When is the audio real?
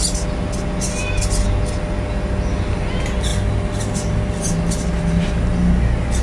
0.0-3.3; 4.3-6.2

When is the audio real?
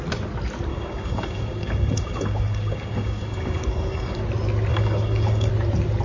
0.0-0.7; 4.2-4.7; 5.5-6.0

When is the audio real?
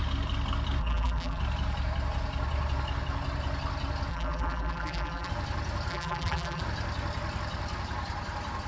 0.0-0.8; 1.4-4.1; 5.3-5.9; 6.6-8.7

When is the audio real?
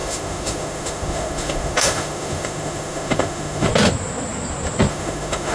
3.7-4.9